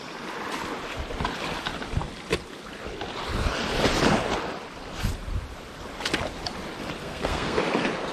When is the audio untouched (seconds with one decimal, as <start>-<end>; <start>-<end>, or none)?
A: 0.0-7.0; 7.6-8.1